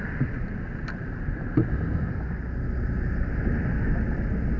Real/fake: real